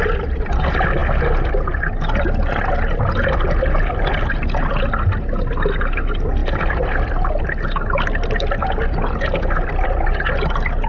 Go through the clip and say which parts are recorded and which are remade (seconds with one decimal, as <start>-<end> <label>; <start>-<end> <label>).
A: 0.0-10.9 recorded